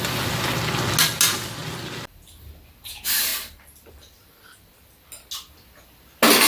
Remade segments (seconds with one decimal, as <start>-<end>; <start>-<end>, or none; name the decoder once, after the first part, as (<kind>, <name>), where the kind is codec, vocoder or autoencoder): none